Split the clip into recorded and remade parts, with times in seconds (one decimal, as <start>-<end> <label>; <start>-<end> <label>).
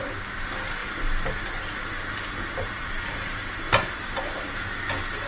0.0-5.3 recorded